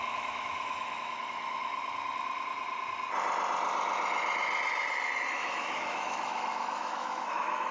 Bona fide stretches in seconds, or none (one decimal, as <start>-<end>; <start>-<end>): 1.7-5.3